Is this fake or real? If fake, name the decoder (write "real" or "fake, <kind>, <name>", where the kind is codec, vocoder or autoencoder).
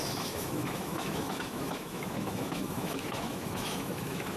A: fake, autoencoder, DAC-VAE